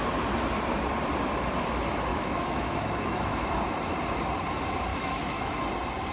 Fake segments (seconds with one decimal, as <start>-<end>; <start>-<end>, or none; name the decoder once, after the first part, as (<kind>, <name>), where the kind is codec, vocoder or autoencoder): 2.1-3.5 (autoencoder, DAC-VAE); 4.9-5.6